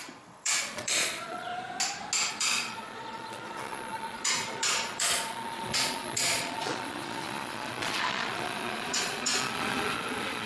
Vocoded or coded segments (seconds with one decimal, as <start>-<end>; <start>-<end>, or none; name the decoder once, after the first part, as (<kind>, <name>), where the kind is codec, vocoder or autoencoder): 0.0-1.5 (vocoder, Vocos); 2.3-10.5